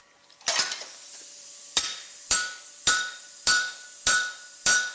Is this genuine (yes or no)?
no